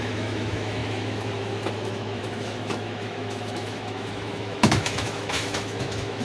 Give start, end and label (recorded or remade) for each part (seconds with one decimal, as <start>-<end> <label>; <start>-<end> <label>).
0.0-6.2 remade